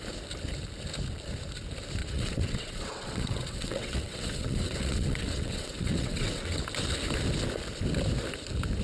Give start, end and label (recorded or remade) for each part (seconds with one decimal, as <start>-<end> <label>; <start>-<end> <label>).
0.0-2.0 recorded; 2.0-6.6 remade; 6.6-8.8 recorded